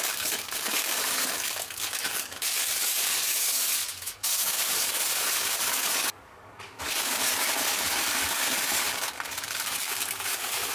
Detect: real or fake fake